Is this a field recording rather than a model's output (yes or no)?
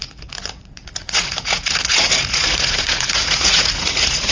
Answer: no